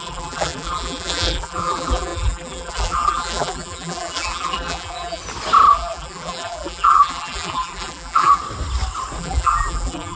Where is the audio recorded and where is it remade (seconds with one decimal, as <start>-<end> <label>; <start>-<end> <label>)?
0.0-5.2 remade; 5.2-5.7 recorded; 5.7-8.4 remade; 8.4-9.2 recorded; 9.2-10.2 remade